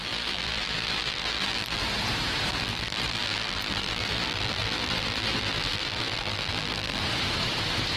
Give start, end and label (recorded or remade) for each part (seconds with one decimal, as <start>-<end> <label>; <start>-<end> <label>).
0.0-1.8 remade; 1.8-2.5 recorded; 2.5-7.0 remade; 7.0-8.0 recorded